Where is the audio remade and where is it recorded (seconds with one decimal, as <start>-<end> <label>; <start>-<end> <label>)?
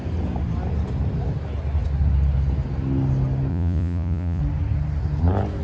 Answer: 0.0-3.5 recorded; 3.5-4.4 remade; 4.4-5.6 recorded